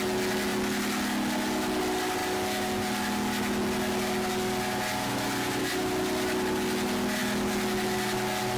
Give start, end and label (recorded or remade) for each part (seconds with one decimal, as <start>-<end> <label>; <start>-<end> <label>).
0.0-8.6 recorded